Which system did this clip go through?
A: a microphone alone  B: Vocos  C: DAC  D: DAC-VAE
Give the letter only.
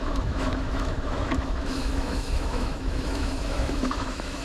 D